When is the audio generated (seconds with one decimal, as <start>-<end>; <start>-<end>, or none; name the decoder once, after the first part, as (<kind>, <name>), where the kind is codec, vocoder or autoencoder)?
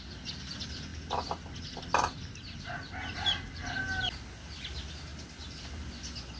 none